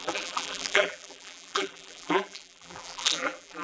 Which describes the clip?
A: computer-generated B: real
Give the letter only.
A